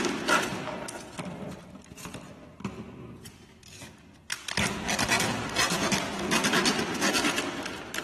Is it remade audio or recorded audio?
recorded